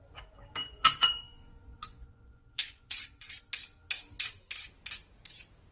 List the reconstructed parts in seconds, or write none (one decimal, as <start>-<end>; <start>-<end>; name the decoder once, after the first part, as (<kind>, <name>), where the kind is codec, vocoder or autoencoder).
0.6-3.4 (vocoder, Vocos)